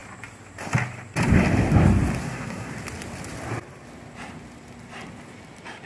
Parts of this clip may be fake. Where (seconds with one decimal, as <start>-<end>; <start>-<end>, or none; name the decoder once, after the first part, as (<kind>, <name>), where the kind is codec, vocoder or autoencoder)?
2.2-2.7 (codec, SNAC)

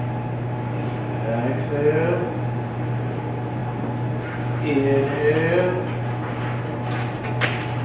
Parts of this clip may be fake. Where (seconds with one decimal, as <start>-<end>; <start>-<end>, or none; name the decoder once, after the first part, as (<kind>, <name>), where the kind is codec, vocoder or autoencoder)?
none

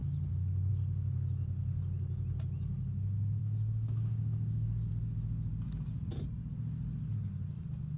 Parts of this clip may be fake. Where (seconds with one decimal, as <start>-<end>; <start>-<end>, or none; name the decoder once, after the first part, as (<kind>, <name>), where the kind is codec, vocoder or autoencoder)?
3.4-4.9 (codec, DAC)

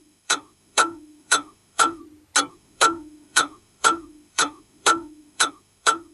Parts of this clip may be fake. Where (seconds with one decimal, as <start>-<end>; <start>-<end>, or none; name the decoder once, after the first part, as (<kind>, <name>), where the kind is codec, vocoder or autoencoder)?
0.0-2.0 (autoencoder, DAC-VAE); 2.5-6.1

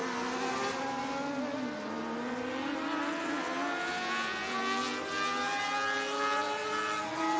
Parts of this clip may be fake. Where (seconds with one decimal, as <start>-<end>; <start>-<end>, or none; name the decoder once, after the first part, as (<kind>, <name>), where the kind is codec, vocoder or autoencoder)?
0.0-1.0 (vocoder, BigVGAN v2)

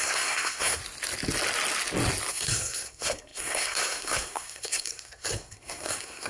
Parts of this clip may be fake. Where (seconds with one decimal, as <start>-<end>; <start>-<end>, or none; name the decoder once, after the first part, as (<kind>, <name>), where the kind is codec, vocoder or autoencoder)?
0.0-0.8 (codec, SNAC); 2.3-6.3